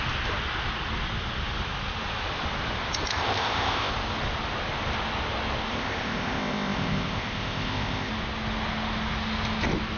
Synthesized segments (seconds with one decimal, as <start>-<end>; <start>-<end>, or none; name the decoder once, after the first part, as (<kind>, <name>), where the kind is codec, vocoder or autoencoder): 3.1-3.9 (codec, ZipCodec); 5.7-8.1